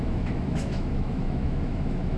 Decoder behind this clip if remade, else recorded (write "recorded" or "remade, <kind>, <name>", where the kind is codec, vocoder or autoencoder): remade, autoencoder, DAC-VAE